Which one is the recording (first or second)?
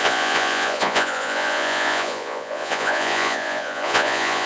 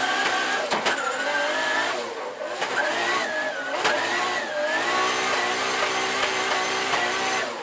second